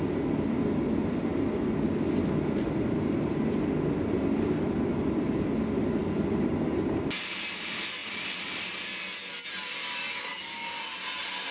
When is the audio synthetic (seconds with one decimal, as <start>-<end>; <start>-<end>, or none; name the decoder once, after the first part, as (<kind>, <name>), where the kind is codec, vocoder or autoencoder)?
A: none